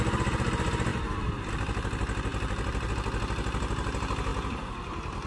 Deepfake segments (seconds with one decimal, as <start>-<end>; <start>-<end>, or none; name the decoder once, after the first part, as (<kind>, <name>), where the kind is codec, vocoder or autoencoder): none